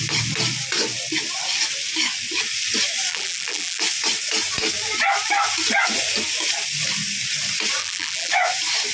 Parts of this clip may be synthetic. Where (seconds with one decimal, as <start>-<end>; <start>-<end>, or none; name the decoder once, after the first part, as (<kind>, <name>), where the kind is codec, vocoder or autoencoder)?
3.1-3.8 (vocoder, BigVGAN v2); 7.8-8.3